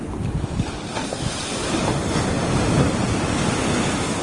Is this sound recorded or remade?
recorded